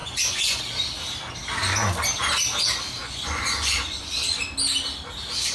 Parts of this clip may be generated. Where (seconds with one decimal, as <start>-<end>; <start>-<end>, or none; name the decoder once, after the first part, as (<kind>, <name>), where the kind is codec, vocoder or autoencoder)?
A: 0.0-0.6 (vocoder, Vocos); 3.0-4.1

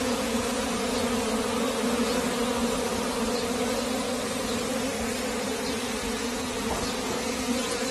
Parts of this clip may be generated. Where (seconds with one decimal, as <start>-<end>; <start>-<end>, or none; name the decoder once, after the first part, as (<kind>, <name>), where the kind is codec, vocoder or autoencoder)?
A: 0.0-1.0 (vocoder, Vocos); 5.7-7.9

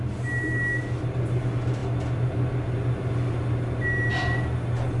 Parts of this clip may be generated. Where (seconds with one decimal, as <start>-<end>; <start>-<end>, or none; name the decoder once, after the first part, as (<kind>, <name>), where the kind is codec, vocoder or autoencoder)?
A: none

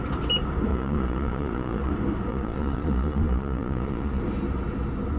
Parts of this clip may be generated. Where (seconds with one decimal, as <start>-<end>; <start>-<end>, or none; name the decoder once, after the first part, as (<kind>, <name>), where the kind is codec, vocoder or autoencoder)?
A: 0.7-1.9 (vocoder, Vocos); 2.3-4.2

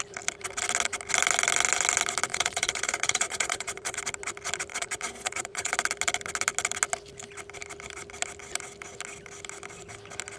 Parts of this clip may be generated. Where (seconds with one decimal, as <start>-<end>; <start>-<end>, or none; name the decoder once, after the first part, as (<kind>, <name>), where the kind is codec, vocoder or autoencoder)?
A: 2.3-4.0 (vocoder, Vocos); 4.7-5.7

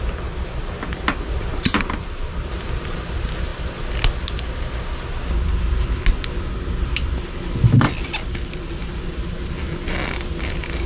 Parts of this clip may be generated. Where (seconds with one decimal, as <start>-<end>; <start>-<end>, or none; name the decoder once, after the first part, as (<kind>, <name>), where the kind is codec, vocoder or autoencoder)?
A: none

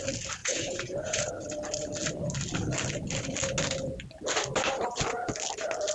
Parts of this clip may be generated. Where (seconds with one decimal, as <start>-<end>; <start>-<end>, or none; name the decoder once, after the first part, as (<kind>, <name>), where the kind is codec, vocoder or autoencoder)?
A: 0.4-1.3 (vocoder, Vocos)